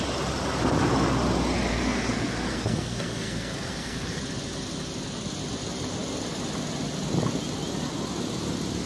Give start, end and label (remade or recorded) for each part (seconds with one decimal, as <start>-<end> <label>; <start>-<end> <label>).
0.0-1.7 recorded; 1.7-4.2 remade; 4.2-8.9 recorded